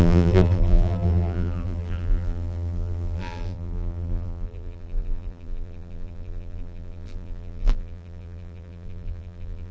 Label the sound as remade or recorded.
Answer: remade